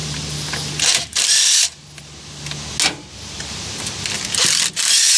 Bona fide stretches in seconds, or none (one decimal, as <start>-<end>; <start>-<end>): 0.0-5.2